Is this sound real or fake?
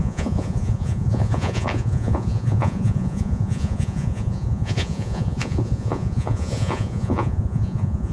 fake